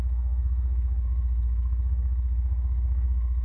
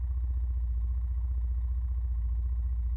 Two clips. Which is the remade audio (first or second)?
first